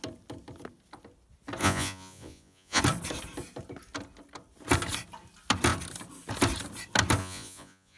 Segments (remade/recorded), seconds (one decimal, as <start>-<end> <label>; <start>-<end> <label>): 0.0-1.6 recorded; 1.6-2.8 remade; 2.8-7.2 recorded; 7.2-8.0 remade